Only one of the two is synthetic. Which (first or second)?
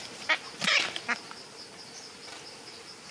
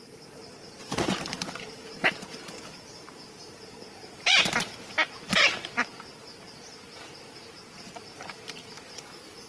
second